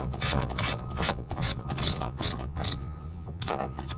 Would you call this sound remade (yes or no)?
yes